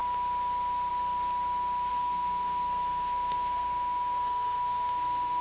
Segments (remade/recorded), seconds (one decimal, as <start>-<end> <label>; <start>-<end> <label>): 0.0-1.9 recorded; 1.9-5.4 remade